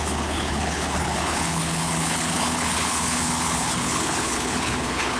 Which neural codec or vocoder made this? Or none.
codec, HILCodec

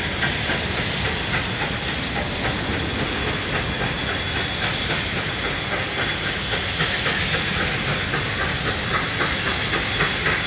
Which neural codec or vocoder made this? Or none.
none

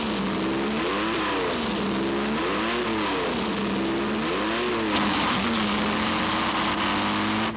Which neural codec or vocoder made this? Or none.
none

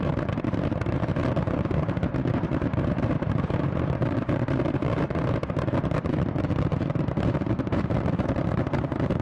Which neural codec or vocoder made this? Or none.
vocoder, BigVGAN v2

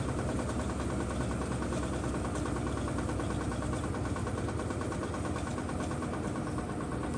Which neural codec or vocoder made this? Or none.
none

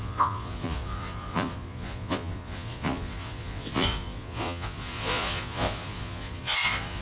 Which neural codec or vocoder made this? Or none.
vocoder, Vocos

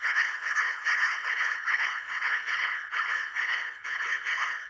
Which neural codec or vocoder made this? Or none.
codec, HILCodec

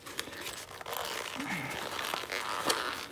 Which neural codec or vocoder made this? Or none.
none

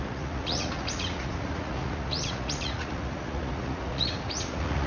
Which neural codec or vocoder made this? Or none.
vocoder, Vocos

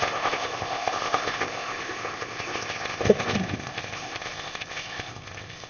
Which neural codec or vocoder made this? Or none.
codec, ZipCodec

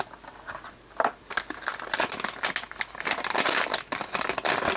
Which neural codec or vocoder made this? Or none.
none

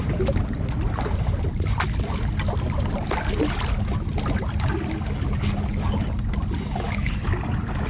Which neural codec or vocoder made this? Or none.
none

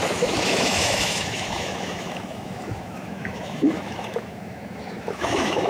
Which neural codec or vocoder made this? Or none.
autoencoder, DAC-VAE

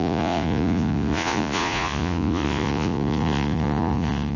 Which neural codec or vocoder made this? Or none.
vocoder, Vocos